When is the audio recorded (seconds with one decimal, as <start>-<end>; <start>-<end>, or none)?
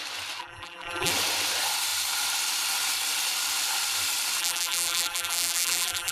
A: 0.0-0.4; 1.1-4.4